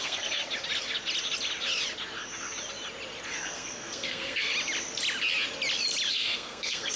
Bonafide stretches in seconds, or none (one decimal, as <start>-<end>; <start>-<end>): 0.4-3.3; 4.5-6.1